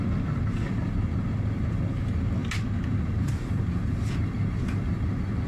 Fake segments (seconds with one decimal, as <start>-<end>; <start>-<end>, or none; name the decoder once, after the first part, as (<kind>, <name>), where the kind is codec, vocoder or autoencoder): none